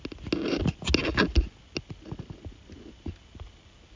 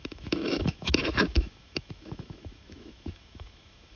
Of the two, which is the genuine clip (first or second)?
first